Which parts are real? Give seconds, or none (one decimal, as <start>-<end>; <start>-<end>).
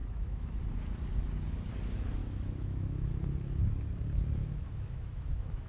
0.6-2.2; 3.1-4.4